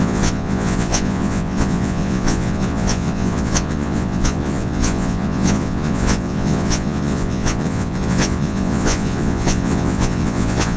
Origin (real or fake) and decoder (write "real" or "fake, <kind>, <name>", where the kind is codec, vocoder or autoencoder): fake, vocoder, Vocos